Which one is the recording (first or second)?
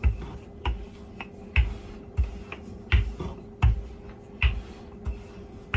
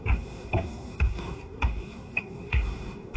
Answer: first